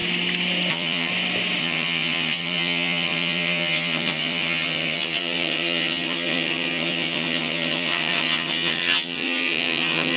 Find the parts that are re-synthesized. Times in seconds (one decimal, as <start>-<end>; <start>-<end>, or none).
0.7-1.1; 1.6-10.2